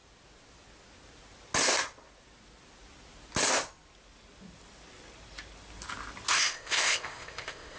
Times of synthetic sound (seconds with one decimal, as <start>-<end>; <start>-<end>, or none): 6.3-7.8